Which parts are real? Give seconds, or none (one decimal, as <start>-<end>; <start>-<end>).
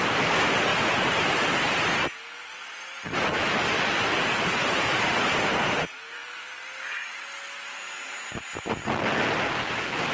0.0-10.1